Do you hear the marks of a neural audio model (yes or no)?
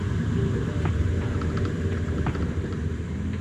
yes